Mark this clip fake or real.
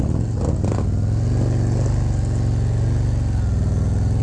real